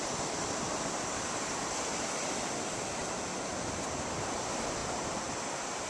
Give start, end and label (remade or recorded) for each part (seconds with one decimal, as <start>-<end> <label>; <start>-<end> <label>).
0.0-5.9 recorded